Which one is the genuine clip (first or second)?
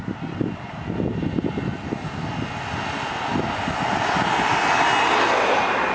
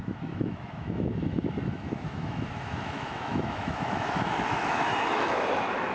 first